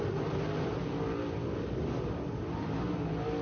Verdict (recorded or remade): recorded